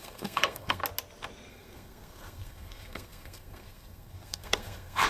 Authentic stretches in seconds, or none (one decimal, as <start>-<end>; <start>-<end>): 0.8-1.5